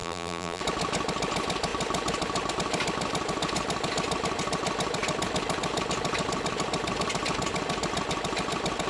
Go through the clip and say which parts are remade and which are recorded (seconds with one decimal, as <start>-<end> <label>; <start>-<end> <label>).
0.0-0.6 remade; 0.6-8.9 recorded